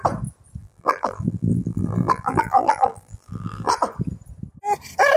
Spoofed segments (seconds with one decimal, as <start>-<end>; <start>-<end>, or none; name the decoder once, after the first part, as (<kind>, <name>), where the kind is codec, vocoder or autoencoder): 0.6-3.7 (vocoder, BigVGAN v2)